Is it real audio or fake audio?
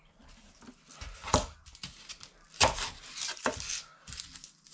real